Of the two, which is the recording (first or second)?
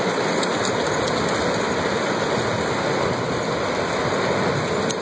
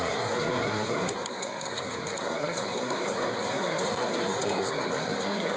first